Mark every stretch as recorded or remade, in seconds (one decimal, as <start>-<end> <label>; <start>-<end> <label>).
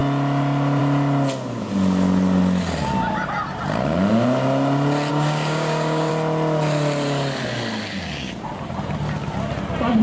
0.0-5.1 recorded; 5.1-6.1 remade; 6.1-10.0 recorded